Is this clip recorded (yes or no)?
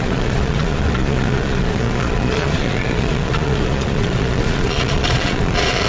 no